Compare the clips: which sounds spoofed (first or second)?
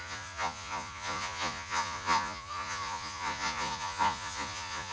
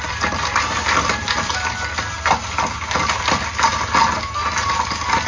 first